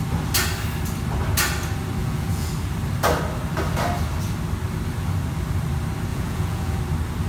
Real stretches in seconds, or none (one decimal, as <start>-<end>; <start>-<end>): 0.0-2.0; 2.5-6.1; 6.8-7.3